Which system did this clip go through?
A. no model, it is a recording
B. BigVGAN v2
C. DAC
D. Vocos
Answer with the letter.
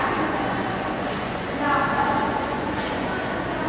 D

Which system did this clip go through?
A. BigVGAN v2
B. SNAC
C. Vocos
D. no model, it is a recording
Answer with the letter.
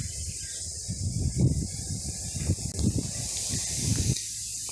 D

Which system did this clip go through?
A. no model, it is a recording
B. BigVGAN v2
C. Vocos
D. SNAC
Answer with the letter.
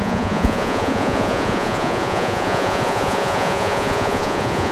C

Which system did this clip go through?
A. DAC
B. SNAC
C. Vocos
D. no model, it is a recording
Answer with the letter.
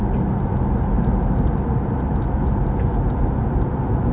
D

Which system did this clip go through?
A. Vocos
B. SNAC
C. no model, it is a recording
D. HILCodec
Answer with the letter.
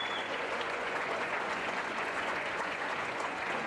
A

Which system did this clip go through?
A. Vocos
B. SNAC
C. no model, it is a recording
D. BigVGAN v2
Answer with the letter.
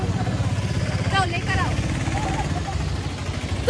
C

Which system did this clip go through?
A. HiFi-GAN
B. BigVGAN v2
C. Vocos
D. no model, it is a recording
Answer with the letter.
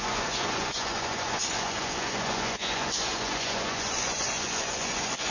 C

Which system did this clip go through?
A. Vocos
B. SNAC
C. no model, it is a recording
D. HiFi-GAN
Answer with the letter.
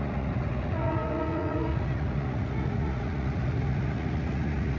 A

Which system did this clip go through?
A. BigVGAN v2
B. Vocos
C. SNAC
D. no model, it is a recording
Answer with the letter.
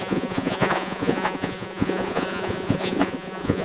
B